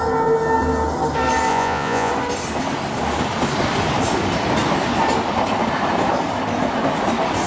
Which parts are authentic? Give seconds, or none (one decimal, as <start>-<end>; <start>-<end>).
0.0-1.5; 2.1-7.5